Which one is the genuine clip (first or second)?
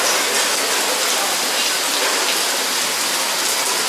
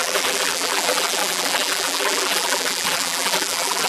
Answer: first